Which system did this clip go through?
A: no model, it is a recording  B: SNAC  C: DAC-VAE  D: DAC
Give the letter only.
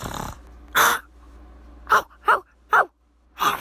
A